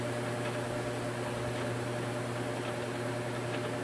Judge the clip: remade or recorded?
recorded